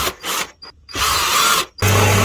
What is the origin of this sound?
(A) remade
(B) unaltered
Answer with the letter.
B